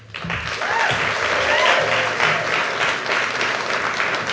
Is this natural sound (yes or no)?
yes